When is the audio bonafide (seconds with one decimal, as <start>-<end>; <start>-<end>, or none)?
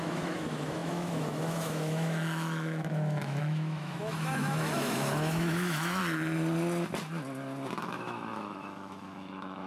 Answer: 6.0-7.8